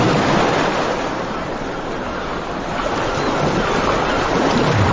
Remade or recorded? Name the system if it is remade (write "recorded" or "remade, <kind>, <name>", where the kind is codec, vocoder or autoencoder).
recorded